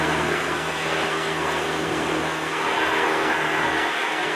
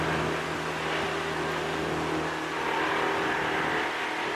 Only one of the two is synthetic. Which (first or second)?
first